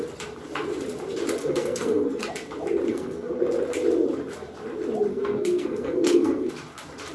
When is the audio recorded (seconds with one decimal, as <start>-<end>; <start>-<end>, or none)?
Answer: 0.0-1.4; 2.3-2.9; 3.4-5.1; 6.5-7.1